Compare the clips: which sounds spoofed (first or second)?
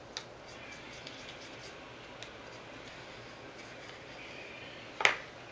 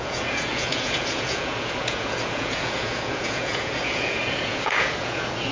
second